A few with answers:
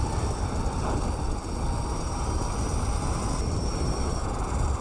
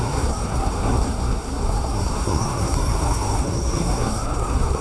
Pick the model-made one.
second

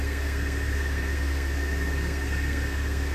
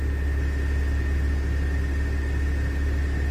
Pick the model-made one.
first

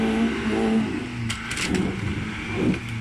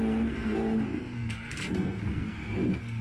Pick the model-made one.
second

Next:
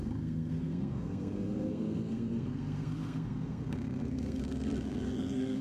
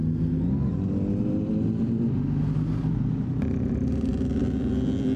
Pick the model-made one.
first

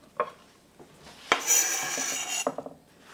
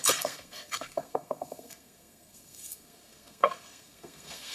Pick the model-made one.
second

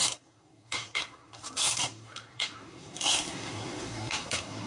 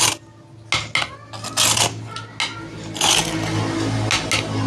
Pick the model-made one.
first